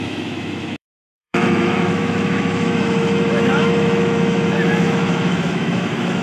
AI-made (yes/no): yes